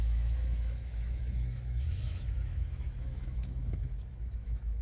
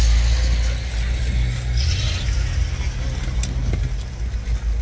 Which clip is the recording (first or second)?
second